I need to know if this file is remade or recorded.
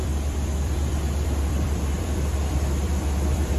remade